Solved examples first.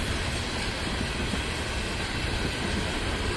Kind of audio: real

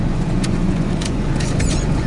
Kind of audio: fake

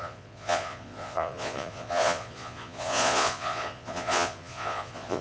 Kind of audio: fake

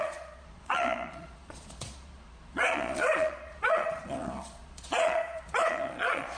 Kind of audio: fake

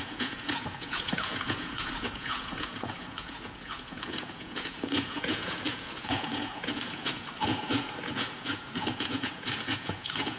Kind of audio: fake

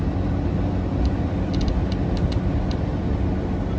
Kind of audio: real